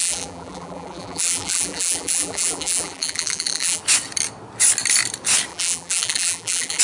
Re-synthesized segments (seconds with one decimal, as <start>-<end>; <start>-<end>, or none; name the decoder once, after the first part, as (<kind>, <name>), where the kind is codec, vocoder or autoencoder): 0.0-3.8 (vocoder, BigVGAN v2); 5.5-6.8